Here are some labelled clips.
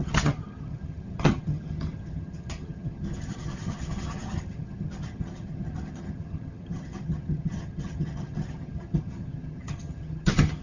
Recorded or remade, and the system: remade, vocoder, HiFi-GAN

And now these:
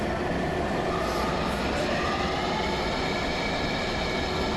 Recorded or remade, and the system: recorded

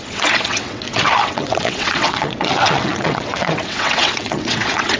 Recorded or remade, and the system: remade, vocoder, WaveNeXt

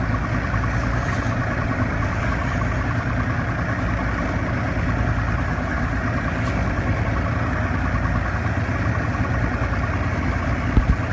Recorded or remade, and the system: recorded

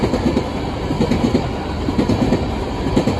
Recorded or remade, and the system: recorded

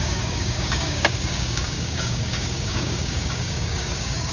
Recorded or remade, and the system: remade, codec, DAC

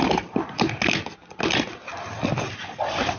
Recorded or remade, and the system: recorded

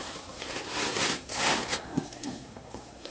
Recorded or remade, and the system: remade, codec, SNAC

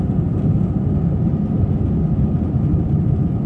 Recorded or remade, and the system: recorded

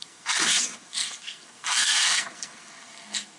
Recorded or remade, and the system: remade, codec, SNAC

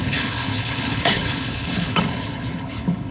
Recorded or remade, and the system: remade, codec, HILCodec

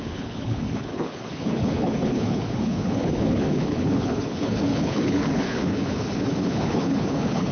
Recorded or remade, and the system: remade, codec, HILCodec